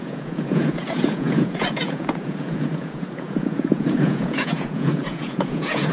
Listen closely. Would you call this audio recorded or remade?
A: remade